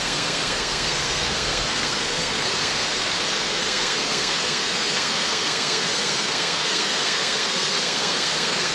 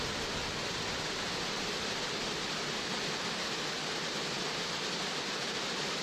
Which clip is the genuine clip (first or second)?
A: second